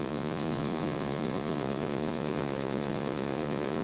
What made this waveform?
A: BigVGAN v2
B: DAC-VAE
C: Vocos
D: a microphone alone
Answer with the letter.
C